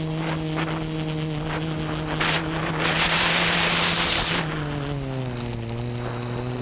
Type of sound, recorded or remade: recorded